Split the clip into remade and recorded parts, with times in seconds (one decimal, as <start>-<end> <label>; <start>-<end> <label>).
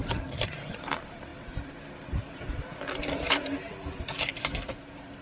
0.0-5.2 recorded